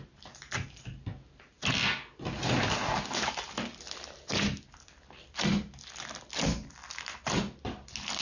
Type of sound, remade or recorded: recorded